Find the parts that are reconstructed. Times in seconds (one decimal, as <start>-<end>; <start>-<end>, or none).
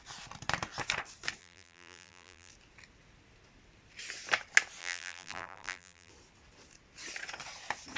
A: 1.4-2.5; 4.8-6.1